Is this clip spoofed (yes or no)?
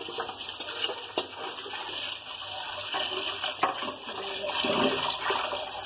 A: no